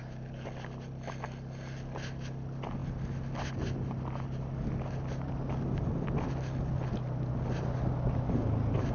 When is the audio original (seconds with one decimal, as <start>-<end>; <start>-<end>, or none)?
0.0-8.9